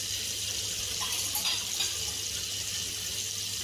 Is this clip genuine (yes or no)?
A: yes